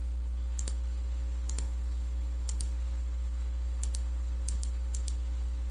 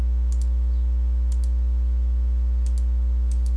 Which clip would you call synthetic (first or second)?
first